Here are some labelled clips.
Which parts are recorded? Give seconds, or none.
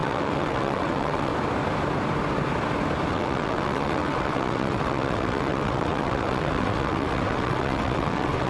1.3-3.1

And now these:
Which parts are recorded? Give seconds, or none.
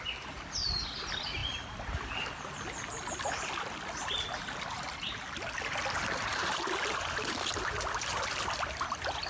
0.0-9.3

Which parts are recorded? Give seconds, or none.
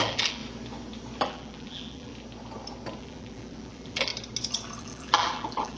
0.4-1.2; 2.1-3.0; 4.1-4.8